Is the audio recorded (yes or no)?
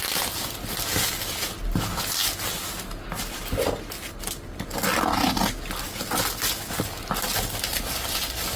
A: yes